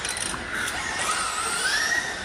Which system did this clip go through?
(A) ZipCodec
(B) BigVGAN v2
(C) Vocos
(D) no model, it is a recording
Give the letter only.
D